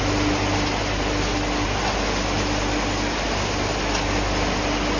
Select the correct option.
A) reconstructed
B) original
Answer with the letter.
B